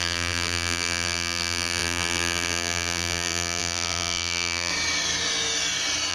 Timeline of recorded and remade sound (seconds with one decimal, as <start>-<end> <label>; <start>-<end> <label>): 0.0-4.7 remade; 4.7-6.1 recorded